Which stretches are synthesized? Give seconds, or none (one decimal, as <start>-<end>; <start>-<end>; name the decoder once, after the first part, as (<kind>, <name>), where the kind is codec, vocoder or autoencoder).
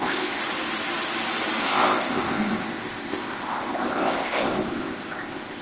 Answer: 0.0-0.4 (codec, ZipCodec); 1.6-5.6